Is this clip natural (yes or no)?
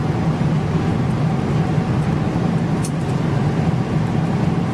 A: yes